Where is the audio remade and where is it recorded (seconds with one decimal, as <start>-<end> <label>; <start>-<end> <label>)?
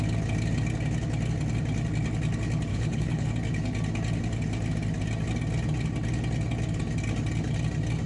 0.0-2.7 recorded; 2.7-3.3 remade; 3.3-8.1 recorded